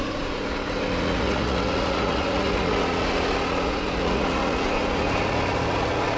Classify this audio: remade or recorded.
remade